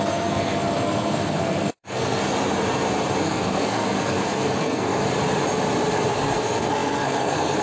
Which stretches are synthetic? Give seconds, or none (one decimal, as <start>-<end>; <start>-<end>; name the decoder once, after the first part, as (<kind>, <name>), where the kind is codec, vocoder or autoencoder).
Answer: 0.0-2.2 (codec, SNAC); 3.2-5.0; 6.1-7.6